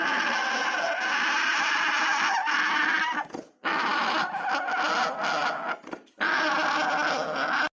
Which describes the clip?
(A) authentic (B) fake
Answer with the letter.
A